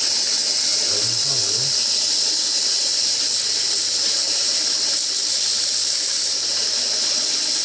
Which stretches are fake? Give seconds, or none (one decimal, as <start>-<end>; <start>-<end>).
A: none